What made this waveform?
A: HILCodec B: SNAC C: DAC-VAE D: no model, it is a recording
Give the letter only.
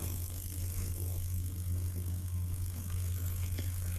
B